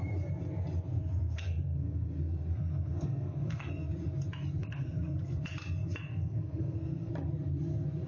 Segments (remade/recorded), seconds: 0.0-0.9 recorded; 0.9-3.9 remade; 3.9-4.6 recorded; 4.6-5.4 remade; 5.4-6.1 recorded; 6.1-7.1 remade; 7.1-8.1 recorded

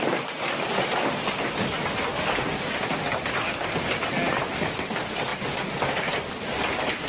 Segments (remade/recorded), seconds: 0.0-7.1 recorded

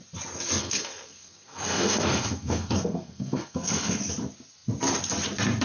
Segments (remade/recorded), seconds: 0.0-0.6 recorded; 0.6-4.0 remade; 4.0-5.6 recorded

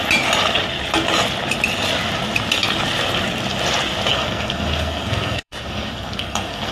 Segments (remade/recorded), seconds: 0.0-4.1 recorded; 4.1-6.7 remade

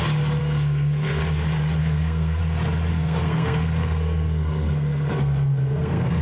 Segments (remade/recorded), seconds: 0.0-0.4 recorded; 0.4-1.2 remade; 1.2-1.8 recorded; 1.8-2.4 remade; 2.4-2.9 recorded; 2.9-6.2 remade

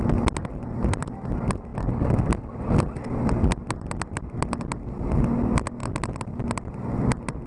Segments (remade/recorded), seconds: 0.0-7.5 recorded